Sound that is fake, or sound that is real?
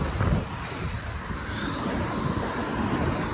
real